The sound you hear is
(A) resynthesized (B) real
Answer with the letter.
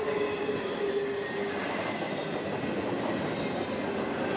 B